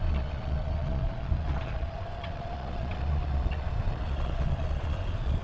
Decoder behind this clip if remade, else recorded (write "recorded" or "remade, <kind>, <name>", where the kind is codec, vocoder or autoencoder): remade, vocoder, Vocos